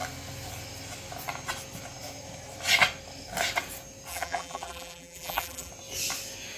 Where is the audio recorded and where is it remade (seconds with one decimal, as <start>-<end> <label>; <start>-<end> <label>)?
0.0-4.1 recorded; 4.1-5.7 remade; 5.7-6.6 recorded